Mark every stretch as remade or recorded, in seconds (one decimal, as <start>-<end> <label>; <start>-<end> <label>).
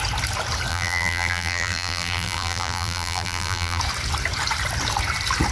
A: 0.0-0.7 recorded; 0.7-3.8 remade; 3.8-5.5 recorded